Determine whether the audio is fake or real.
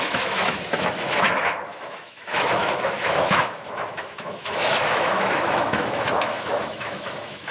fake